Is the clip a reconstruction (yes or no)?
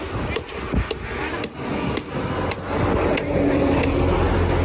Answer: no